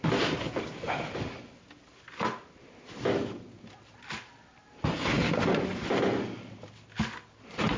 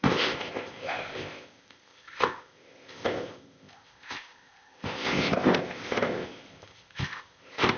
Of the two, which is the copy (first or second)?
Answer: second